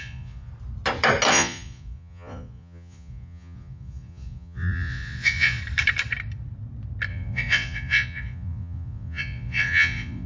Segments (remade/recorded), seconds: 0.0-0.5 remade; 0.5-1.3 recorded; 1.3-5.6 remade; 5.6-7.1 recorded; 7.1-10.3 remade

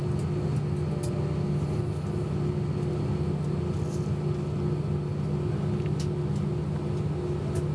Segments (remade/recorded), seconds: 0.0-7.7 recorded

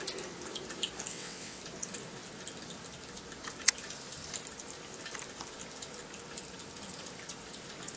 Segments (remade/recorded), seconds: 0.0-1.1 recorded; 1.1-1.6 remade; 1.6-8.0 recorded

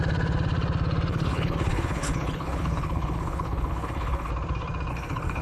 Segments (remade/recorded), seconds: 0.0-1.1 recorded; 1.1-4.3 remade; 4.3-4.9 recorded; 4.9-5.4 remade

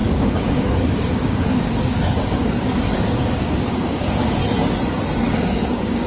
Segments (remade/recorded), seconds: 0.0-4.4 remade; 4.4-5.3 recorded; 5.3-6.1 remade

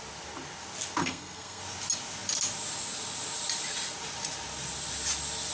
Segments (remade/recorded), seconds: 0.0-1.0 recorded; 1.0-1.6 remade; 1.6-5.5 recorded

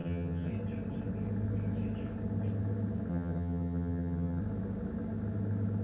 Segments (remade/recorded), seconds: 0.0-0.5 remade; 0.5-3.1 recorded; 3.1-4.4 remade; 4.4-5.8 recorded